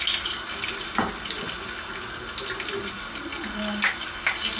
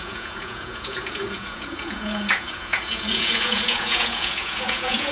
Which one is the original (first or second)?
first